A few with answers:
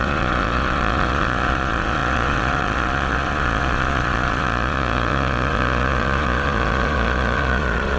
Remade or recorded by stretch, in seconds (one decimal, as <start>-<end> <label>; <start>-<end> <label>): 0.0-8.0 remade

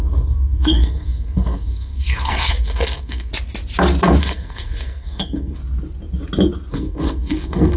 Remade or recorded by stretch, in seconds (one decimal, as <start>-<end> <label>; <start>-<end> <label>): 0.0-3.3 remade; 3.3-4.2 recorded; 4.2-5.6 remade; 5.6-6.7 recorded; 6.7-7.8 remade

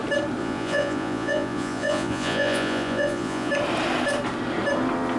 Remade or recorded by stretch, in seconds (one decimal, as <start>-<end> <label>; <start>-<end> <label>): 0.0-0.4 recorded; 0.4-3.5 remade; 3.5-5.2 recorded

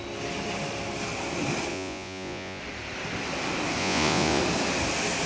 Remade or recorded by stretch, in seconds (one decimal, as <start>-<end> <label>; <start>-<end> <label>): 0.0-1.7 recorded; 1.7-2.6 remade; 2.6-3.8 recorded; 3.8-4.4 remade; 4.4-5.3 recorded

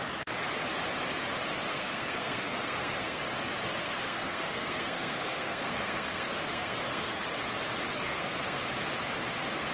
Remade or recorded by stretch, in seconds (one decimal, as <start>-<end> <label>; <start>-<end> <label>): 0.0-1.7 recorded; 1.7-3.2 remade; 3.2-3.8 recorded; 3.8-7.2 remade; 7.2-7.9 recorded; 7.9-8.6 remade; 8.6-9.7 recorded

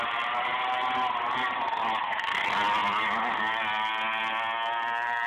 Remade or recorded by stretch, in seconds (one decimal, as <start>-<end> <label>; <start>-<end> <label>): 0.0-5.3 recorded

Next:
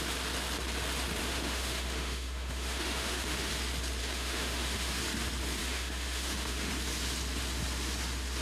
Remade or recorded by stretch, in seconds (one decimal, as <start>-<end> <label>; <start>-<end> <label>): 0.0-1.2 recorded; 1.2-3.5 remade; 3.5-4.0 recorded; 4.0-5.0 remade; 5.0-5.6 recorded; 5.6-6.7 remade; 6.7-8.4 recorded